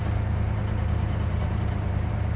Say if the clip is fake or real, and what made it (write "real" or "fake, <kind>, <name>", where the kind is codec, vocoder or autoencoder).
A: fake, vocoder, BigVGAN v2